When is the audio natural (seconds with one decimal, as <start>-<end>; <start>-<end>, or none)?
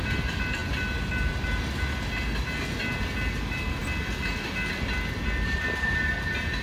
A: 0.0-6.6